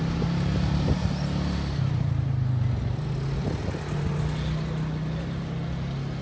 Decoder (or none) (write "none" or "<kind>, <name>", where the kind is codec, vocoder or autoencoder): none